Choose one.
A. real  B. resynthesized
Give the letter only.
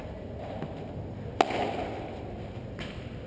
A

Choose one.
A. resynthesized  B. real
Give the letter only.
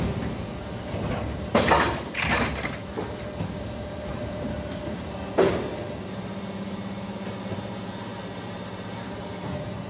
B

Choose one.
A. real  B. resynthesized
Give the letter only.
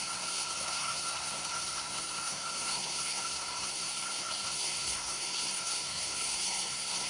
B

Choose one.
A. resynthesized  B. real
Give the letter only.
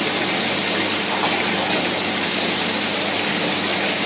B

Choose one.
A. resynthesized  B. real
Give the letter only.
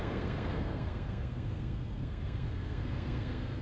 A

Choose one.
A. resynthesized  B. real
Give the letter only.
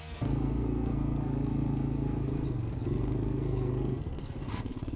A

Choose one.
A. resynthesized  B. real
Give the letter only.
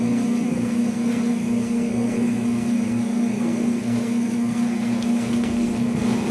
A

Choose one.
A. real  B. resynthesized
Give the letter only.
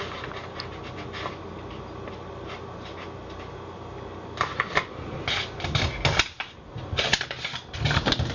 A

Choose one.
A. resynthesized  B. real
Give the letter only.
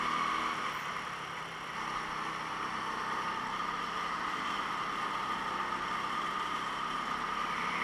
B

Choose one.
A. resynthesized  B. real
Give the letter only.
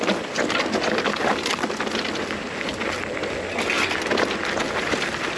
B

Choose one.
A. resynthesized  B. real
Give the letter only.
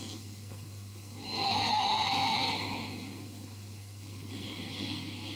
A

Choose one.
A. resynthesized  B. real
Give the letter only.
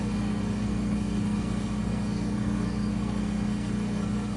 A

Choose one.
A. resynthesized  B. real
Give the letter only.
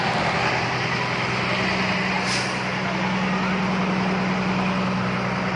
B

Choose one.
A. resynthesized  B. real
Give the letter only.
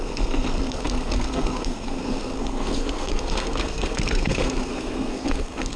A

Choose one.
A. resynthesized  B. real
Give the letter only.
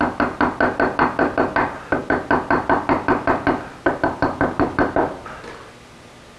B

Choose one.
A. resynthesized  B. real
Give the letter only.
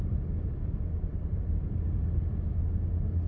B